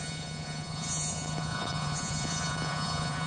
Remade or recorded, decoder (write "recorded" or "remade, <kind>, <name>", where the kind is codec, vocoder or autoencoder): remade, vocoder, Vocos